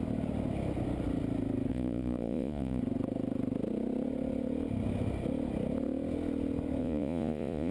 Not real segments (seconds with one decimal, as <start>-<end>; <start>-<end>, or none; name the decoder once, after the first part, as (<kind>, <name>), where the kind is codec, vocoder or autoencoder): 1.7-2.8 (vocoder, Vocos); 6.8-7.7